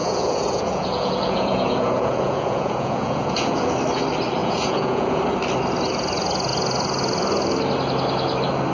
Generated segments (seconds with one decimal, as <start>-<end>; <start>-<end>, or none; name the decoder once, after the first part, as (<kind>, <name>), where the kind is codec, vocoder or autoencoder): 0.0-3.7 (vocoder, Vocos); 4.4-5.2